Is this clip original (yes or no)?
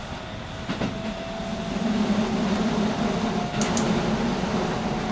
yes